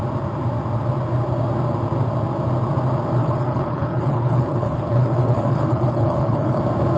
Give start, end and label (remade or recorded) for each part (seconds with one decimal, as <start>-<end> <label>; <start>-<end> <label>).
0.0-3.2 recorded; 3.2-6.6 remade; 6.6-7.0 recorded